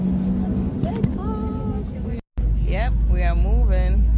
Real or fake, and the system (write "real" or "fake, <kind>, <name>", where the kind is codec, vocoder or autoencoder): real